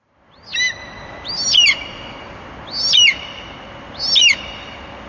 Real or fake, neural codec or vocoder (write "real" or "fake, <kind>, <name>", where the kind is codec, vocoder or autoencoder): real